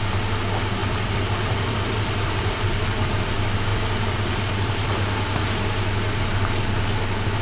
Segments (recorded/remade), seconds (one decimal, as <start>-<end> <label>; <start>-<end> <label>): 0.0-0.8 recorded; 0.8-3.3 remade; 3.3-3.7 recorded; 3.7-6.4 remade; 6.4-7.4 recorded